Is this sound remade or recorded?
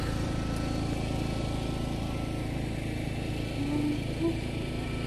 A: recorded